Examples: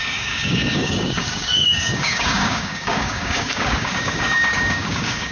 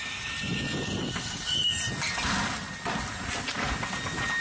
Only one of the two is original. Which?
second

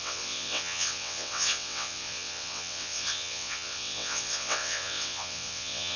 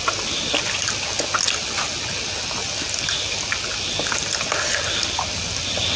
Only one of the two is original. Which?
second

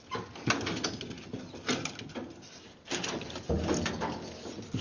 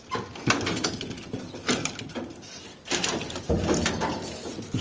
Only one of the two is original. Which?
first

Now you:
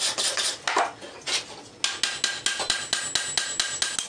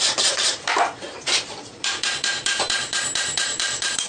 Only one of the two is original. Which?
first